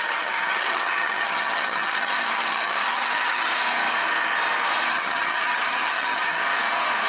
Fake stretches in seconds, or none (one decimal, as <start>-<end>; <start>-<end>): 0.0-3.5; 4.9-6.4